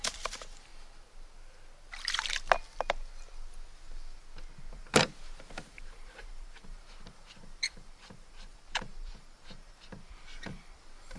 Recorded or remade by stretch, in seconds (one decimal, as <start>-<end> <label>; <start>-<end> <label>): 0.0-0.7 remade; 0.7-4.7 recorded; 4.7-11.2 remade